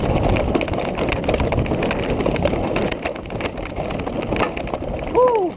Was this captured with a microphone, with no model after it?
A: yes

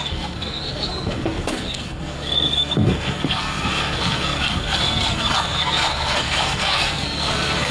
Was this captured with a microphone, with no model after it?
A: no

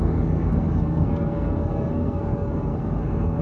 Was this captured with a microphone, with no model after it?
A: no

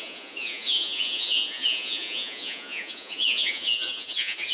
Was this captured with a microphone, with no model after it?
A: no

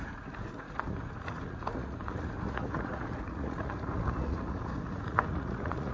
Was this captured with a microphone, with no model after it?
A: no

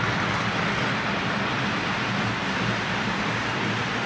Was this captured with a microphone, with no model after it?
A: yes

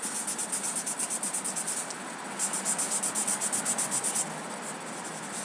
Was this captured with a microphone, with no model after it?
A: yes